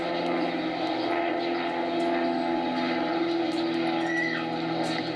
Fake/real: real